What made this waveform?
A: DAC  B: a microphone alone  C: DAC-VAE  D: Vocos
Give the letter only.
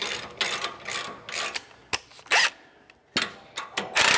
B